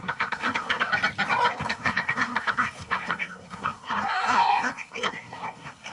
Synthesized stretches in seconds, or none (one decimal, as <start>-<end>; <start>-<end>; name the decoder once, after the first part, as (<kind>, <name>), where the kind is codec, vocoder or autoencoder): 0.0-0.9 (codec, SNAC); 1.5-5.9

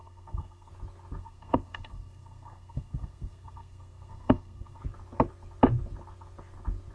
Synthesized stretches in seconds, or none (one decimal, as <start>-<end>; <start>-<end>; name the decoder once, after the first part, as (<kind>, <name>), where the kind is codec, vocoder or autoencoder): 0.0-0.7 (codec, SNAC); 1.2-4.8

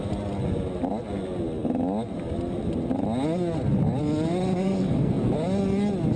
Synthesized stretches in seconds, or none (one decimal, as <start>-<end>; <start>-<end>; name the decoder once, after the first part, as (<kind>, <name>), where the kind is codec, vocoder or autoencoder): 4.6-5.2 (codec, SNAC)

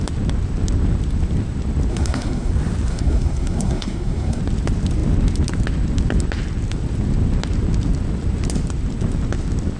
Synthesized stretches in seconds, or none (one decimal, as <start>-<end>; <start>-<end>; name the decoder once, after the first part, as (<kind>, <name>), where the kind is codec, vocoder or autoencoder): 1.9-2.5 (codec, SNAC); 2.9-4.4

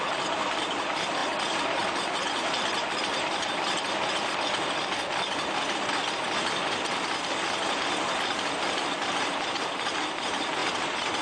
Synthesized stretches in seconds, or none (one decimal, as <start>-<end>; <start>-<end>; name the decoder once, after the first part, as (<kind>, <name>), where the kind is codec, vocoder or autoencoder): none